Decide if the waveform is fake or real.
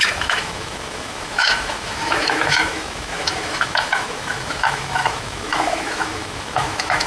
fake